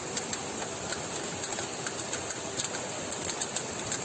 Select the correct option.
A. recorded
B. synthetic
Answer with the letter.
A